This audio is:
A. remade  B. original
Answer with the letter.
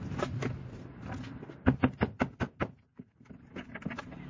B